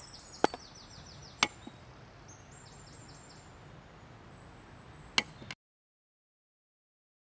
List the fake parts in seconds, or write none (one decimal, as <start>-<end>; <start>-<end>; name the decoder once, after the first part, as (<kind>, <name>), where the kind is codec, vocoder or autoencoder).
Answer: none